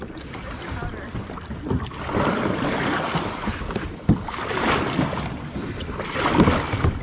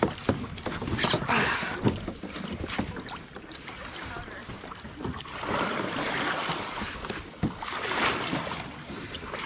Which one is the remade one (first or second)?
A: second